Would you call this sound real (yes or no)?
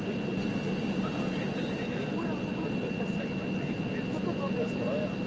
yes